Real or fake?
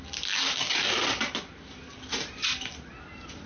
real